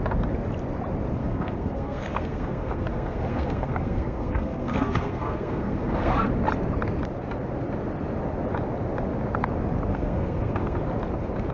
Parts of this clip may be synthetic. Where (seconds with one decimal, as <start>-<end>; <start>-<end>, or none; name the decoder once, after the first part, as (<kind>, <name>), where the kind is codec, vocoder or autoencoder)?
1.2-6.3 (codec, SNAC); 9.9-10.8